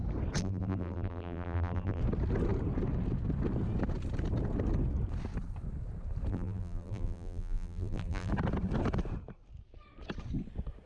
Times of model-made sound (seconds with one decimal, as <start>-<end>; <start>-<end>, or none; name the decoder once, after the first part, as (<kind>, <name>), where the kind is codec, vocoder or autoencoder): 0.4-2.0 (vocoder, BigVGAN v2); 6.3-8.3